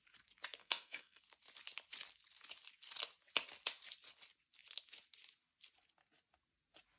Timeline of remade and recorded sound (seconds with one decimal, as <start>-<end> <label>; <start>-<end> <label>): 0.0-0.6 recorded; 0.6-1.2 remade; 1.2-7.0 recorded